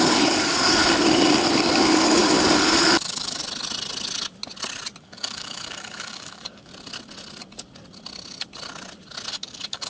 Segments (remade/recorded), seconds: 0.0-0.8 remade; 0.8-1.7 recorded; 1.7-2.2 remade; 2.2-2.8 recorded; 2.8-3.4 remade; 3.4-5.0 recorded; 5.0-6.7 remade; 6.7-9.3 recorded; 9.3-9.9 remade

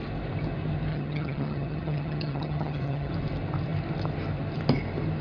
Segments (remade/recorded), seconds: 0.0-0.9 recorded; 0.9-3.1 remade; 3.1-5.2 recorded

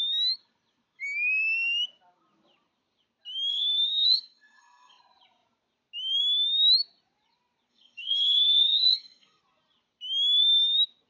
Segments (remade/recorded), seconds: 0.0-3.5 recorded; 3.5-5.0 remade; 5.0-7.7 recorded; 7.7-9.4 remade; 9.4-11.1 recorded

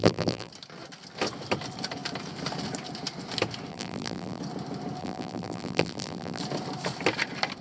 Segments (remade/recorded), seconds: 0.0-0.5 remade; 0.5-3.7 recorded; 3.7-4.4 remade; 4.4-5.0 recorded; 5.0-6.4 remade; 6.4-7.6 recorded